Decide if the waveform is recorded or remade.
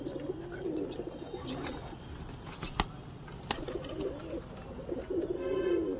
recorded